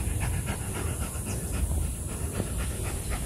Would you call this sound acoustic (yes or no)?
yes